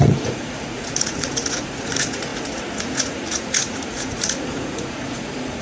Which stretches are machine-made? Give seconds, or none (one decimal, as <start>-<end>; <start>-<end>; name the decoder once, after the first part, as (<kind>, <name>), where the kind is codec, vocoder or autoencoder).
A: 0.0-5.6 (vocoder, Vocos)